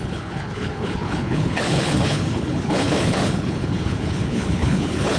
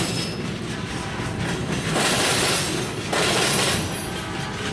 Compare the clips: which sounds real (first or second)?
second